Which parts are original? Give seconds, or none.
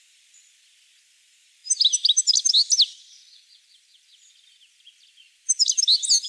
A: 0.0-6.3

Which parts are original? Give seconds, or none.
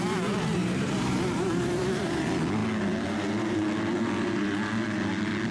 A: 0.0-0.6; 2.2-5.5